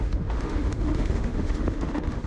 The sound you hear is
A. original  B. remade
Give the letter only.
B